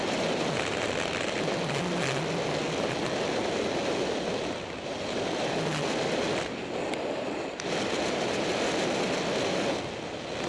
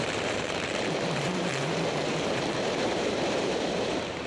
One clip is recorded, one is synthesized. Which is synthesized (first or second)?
second